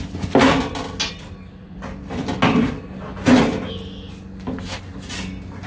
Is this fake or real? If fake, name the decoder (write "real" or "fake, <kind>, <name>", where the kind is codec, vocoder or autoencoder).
real